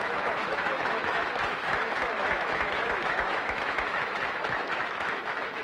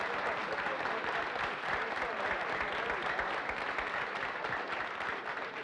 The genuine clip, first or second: second